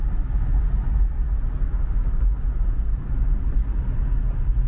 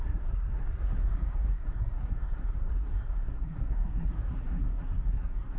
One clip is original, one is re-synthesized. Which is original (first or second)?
first